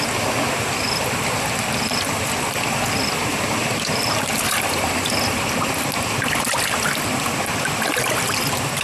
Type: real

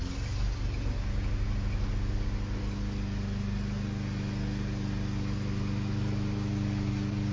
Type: real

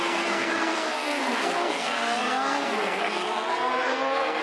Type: fake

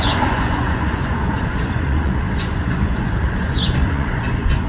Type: fake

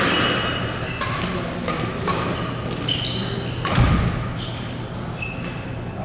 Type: real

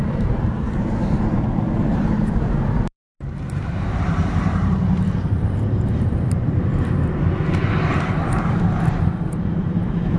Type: fake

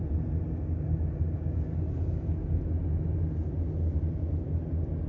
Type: real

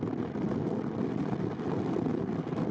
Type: real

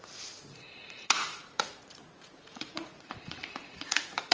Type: fake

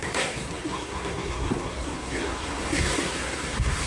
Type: fake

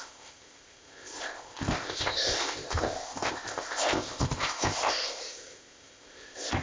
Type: fake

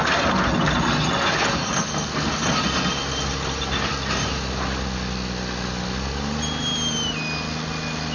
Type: real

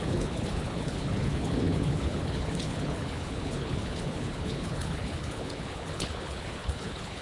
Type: fake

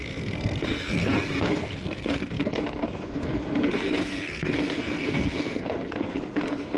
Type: fake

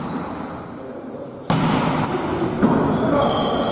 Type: real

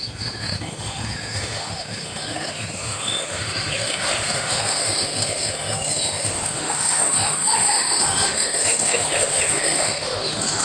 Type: fake